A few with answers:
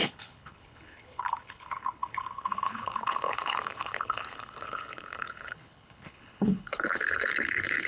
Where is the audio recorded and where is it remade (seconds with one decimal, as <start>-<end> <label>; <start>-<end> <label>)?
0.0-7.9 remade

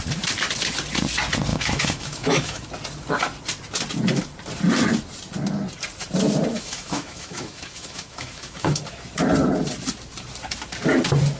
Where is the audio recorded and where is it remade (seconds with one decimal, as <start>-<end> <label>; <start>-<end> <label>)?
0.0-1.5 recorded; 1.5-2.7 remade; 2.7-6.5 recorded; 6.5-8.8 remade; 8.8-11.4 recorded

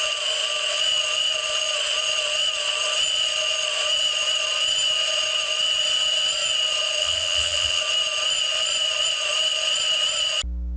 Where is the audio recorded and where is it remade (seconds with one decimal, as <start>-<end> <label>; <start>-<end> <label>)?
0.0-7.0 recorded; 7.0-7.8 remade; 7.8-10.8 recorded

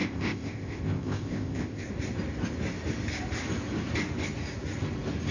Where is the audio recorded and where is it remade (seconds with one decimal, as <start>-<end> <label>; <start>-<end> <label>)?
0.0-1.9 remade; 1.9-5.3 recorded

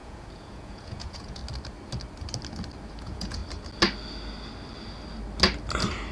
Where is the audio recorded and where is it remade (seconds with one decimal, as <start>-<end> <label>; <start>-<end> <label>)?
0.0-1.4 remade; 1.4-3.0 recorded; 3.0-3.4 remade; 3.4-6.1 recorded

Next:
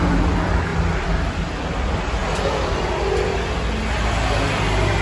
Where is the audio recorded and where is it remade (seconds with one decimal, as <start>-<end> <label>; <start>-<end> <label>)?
0.0-2.2 remade; 2.2-5.0 recorded